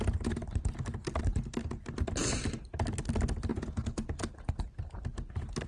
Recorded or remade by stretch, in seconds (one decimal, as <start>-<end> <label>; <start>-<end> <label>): 0.0-3.5 recorded; 3.5-4.5 remade; 4.5-5.7 recorded